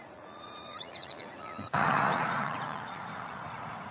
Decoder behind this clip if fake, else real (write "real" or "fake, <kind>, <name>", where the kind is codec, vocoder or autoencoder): fake, vocoder, Vocos